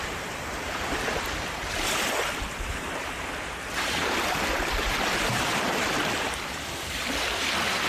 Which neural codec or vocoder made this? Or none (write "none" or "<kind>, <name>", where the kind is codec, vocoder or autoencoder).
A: vocoder, BigVGAN v2